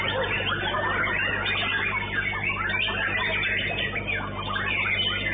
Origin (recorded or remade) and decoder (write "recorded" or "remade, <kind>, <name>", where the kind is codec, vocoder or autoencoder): recorded